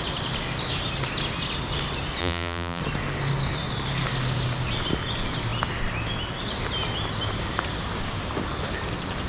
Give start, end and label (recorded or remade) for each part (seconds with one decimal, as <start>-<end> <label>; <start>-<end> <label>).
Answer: 0.0-2.2 recorded; 2.2-2.8 remade; 2.8-9.3 recorded